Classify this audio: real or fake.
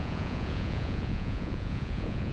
fake